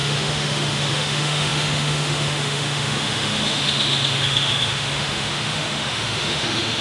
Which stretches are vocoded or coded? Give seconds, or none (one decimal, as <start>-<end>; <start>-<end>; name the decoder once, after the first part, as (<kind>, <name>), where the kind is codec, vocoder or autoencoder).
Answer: 0.0-6.8 (autoencoder, DAC-VAE)